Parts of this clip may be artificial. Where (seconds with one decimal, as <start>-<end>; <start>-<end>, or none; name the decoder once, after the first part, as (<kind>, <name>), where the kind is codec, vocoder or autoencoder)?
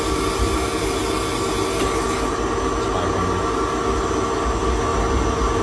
none